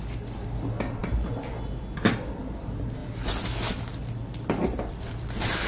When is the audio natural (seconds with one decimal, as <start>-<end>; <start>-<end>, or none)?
0.0-5.7